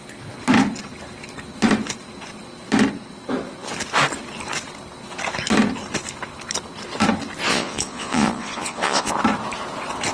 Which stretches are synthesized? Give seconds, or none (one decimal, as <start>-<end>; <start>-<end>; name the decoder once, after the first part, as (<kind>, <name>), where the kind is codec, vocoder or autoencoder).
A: 7.5-9.1 (vocoder, Vocos)